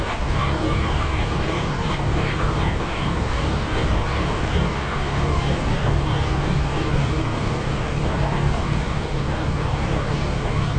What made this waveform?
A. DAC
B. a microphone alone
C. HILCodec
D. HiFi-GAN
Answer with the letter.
A